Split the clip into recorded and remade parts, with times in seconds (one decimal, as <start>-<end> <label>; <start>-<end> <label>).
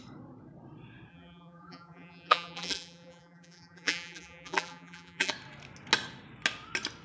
0.0-1.1 recorded; 1.1-5.3 remade; 5.3-7.0 recorded